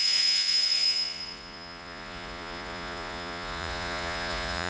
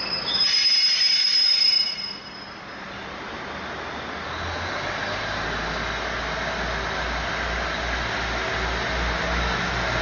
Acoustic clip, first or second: second